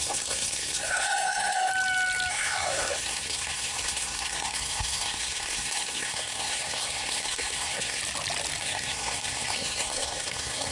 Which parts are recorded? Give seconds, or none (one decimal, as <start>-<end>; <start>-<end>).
1.7-2.3; 8.0-8.6